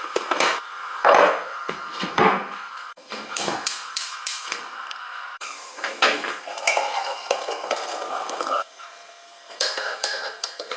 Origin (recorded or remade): remade